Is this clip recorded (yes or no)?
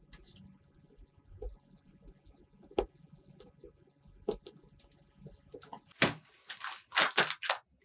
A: yes